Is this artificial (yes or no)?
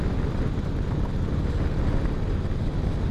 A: no